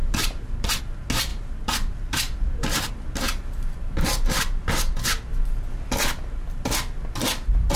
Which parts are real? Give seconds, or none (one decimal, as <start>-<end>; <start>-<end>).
0.8-1.3; 2.9-7.8